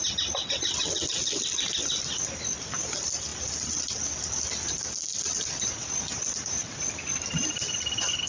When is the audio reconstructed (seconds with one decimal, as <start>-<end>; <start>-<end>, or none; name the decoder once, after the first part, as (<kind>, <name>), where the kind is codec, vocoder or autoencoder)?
none